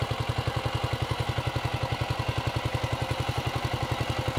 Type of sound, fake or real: real